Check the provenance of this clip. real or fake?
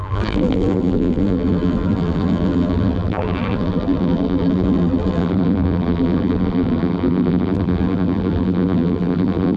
fake